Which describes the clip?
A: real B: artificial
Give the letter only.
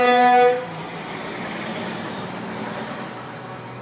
B